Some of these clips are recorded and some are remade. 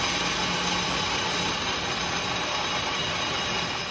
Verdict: recorded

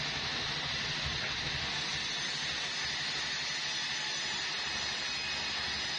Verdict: recorded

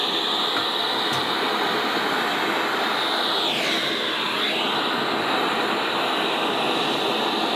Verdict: recorded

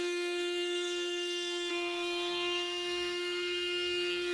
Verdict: remade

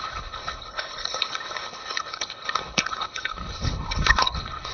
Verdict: remade